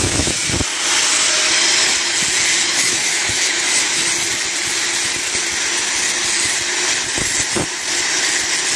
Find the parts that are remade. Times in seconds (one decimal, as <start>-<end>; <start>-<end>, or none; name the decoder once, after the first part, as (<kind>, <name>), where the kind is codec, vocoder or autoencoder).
0.0-0.4 (autoencoder, DAC-VAE); 2.7-4.0